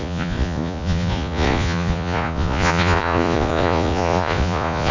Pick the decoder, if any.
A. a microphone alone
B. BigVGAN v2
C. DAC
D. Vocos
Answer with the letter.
D